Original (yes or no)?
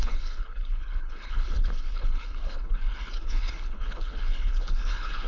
no